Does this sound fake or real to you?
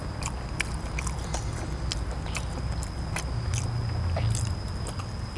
real